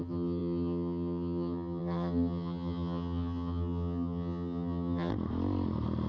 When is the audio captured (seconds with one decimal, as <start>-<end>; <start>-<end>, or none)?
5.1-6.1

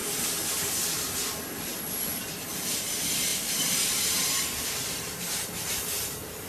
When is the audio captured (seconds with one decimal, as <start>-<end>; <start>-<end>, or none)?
0.0-0.6; 1.7-2.2

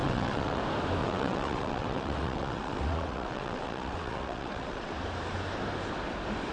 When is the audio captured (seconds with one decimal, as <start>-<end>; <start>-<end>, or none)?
0.6-1.0; 4.9-6.5